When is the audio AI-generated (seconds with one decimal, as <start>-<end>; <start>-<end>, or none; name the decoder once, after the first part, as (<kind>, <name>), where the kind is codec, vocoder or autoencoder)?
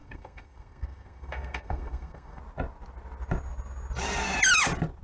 0.0-2.4 (codec, SNAC)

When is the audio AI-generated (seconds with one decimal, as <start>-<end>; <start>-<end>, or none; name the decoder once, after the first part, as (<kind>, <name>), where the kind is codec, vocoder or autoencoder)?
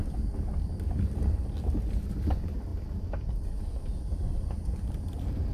none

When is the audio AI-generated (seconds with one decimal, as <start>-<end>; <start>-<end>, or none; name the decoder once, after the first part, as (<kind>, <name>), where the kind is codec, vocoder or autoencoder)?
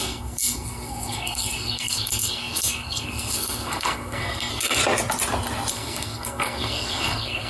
0.0-4.8 (codec, SNAC); 5.7-7.5